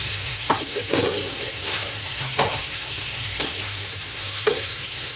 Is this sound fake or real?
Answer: fake